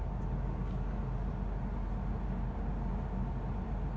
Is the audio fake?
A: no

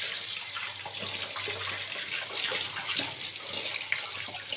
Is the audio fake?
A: no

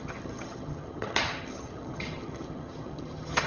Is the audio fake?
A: yes